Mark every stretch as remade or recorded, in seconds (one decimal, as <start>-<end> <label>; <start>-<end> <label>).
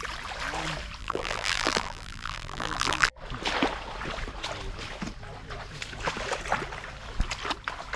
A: 0.0-1.0 recorded; 1.0-3.1 remade; 3.1-8.0 recorded